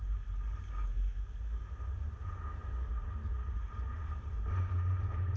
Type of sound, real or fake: real